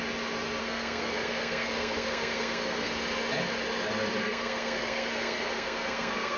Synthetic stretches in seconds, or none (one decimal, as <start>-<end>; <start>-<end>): 0.6-2.9; 4.2-6.4